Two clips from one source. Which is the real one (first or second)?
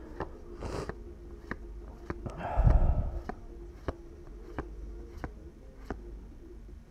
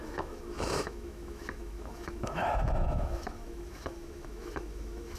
first